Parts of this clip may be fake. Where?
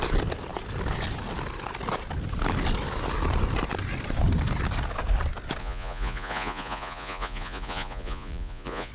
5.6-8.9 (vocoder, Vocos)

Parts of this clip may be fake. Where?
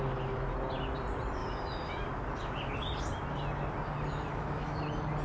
1.4-1.9 (autoencoder, DAC-VAE); 4.3-4.8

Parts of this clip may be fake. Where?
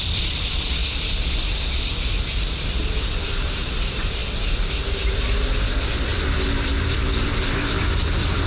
0.0-0.8 (vocoder, BigVGAN v2); 2.2-4.2; 4.9-8.5